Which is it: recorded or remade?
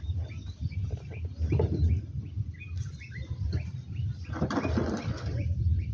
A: recorded